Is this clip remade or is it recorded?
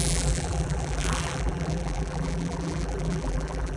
remade